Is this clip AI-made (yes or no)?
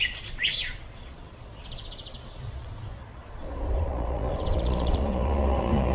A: yes